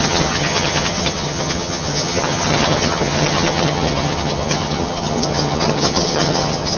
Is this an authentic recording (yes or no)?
no